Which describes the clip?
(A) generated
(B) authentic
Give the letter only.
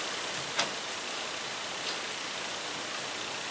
B